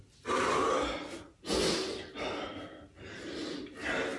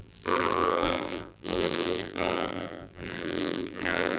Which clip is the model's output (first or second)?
second